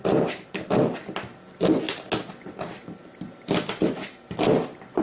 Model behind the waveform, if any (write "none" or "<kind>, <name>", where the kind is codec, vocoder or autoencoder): none